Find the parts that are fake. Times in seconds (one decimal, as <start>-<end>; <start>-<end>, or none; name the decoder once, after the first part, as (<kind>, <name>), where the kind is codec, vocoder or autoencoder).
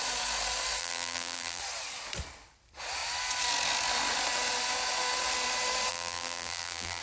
0.8-1.6 (vocoder, BigVGAN v2); 5.9-7.0